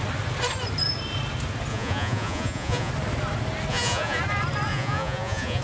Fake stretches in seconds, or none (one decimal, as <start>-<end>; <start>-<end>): 1.7-2.9; 3.7-4.2; 4.7-5.6

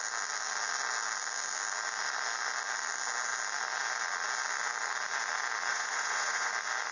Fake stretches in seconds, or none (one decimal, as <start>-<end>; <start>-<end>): 5.7-6.5